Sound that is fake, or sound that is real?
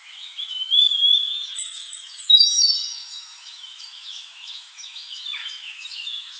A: fake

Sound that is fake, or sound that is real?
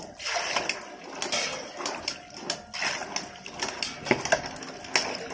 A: real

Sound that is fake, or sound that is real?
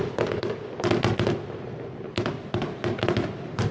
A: real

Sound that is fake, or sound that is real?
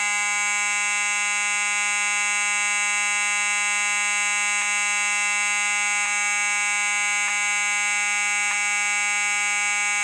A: real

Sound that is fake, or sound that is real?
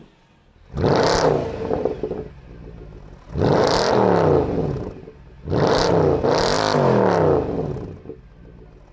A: real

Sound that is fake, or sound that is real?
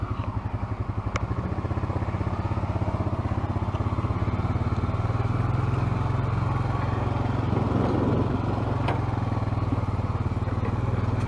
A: real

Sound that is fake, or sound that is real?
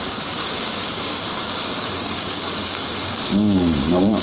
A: fake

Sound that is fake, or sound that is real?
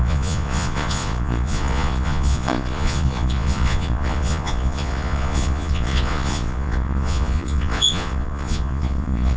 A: fake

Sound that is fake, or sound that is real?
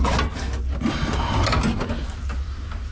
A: real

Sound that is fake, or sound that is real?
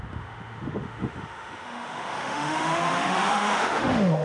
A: fake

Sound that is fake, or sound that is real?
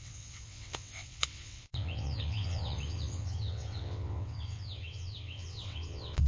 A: fake